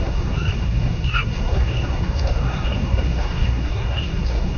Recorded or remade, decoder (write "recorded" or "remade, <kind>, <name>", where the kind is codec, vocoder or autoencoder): remade, codec, SNAC